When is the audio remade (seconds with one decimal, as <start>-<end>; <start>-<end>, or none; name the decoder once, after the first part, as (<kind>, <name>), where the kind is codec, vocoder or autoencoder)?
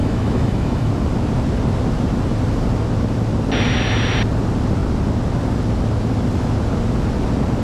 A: 0.0-0.9 (autoencoder, DAC-VAE)